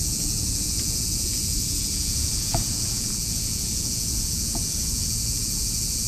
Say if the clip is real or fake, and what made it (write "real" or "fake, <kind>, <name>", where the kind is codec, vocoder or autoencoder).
fake, vocoder, Vocos